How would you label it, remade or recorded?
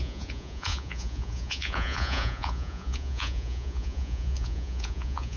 remade